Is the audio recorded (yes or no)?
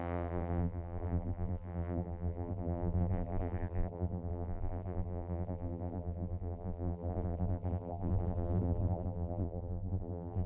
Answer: no